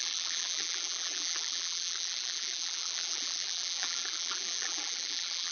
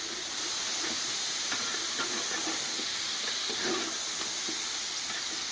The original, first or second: second